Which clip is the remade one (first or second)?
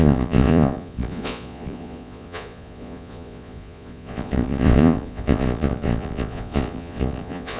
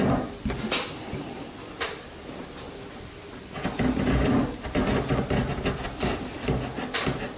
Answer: first